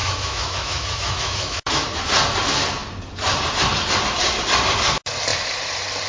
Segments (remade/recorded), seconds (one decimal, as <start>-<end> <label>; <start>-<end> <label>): 0.0-1.7 remade; 1.7-6.1 recorded